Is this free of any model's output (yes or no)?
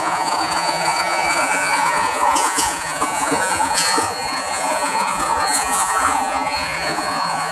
no